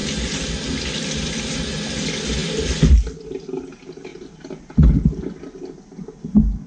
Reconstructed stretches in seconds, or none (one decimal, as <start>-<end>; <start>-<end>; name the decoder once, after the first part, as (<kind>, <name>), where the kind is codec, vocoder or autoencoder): none